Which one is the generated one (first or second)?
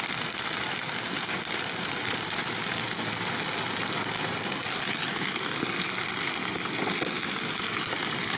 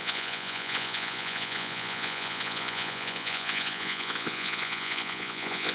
second